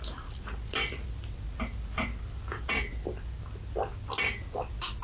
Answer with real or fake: real